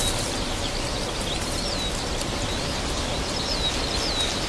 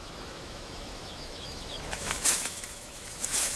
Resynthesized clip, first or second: second